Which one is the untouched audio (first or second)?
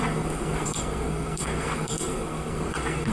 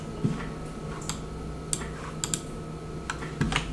second